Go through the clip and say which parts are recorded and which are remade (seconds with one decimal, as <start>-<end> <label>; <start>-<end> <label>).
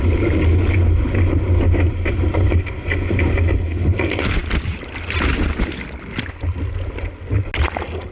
0.0-8.1 recorded